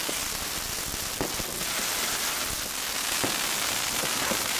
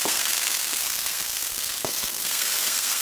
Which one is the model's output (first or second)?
second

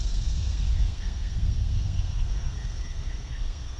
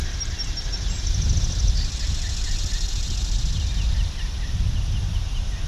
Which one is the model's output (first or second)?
first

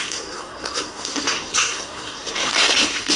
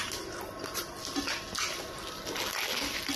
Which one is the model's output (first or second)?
first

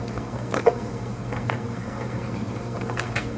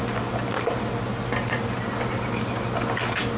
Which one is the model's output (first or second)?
first